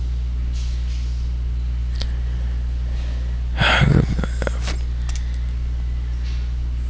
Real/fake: real